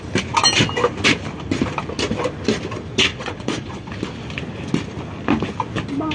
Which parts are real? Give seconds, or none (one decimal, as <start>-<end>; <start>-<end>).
0.0-3.1; 3.9-6.1